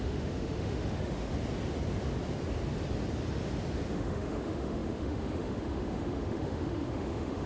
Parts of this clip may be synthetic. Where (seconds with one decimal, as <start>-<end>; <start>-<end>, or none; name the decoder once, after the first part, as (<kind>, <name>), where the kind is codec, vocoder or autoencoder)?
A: 0.0-1.3 (autoencoder, DAC-VAE); 3.9-7.5